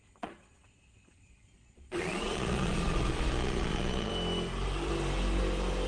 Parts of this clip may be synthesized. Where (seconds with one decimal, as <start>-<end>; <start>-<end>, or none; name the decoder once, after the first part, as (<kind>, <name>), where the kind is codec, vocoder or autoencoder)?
0.0-4.1 (vocoder, Vocos)